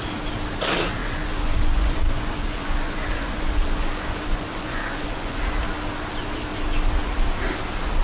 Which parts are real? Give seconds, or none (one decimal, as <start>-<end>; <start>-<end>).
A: 0.0-1.0; 5.4-8.0